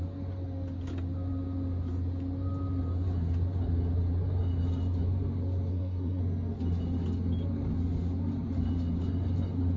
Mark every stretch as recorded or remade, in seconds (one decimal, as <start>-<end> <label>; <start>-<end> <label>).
0.0-5.7 recorded; 5.7-6.2 remade; 6.2-9.8 recorded